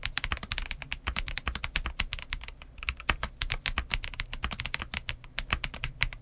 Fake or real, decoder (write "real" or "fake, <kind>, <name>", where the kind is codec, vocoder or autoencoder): real